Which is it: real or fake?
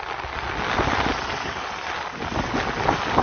real